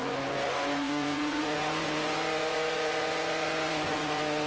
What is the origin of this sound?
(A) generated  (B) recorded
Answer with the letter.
A